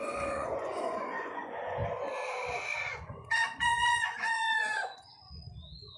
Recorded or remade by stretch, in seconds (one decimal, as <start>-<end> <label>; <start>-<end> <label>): 0.0-1.8 remade; 1.8-2.8 recorded; 2.8-6.0 remade